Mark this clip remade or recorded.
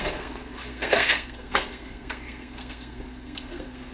remade